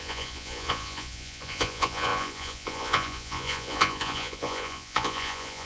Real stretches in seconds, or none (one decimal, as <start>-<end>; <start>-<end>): none